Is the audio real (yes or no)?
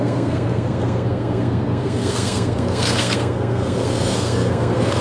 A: no